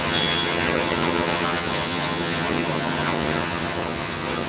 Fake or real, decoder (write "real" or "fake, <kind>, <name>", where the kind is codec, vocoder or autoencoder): fake, vocoder, HiFi-GAN